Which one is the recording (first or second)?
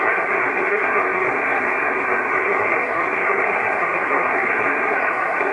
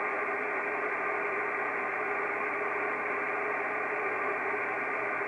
second